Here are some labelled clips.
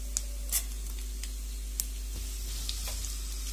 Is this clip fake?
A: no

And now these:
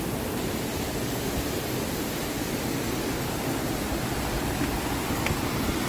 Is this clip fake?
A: no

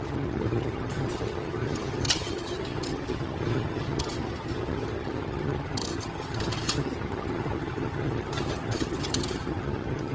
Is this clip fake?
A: yes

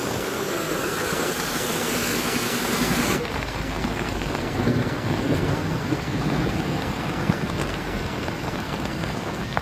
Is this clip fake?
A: yes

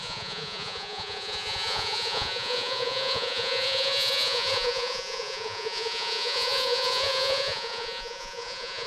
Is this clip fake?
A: yes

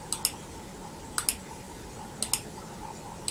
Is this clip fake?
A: no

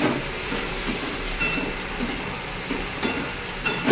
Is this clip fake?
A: yes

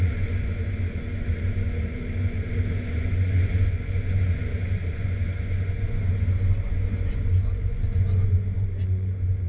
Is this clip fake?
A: yes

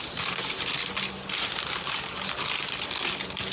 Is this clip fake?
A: no